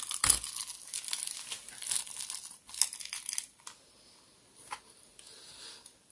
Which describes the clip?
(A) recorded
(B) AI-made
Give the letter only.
A